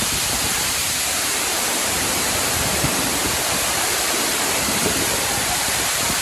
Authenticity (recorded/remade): remade